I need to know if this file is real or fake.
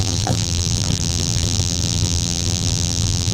fake